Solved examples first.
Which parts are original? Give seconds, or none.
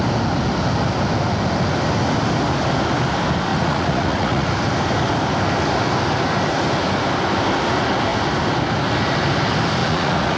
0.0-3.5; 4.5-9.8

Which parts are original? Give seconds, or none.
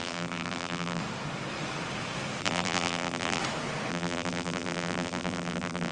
1.0-2.4; 3.4-3.9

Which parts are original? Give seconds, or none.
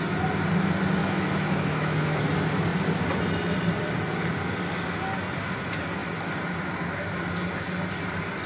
0.0-1.0; 2.2-8.5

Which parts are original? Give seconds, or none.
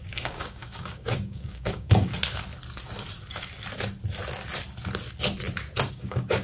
2.1-5.9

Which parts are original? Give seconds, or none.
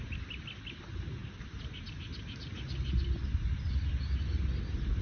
0.0-5.0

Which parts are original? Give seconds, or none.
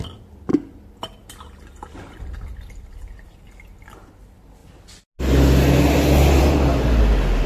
0.0-7.5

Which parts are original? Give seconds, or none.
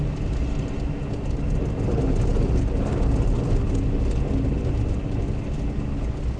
0.0-6.4